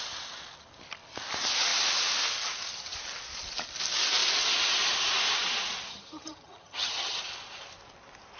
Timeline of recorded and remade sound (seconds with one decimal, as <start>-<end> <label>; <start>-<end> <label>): 0.0-5.9 recorded; 5.9-7.2 remade; 7.2-8.4 recorded